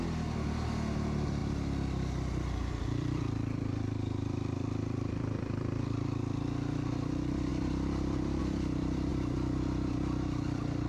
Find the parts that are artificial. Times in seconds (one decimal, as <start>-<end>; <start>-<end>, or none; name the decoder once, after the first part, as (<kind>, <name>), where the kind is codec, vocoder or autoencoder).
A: 0.0-10.9 (vocoder, BigVGAN v2)